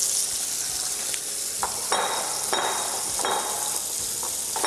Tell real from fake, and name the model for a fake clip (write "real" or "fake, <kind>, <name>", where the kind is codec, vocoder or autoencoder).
real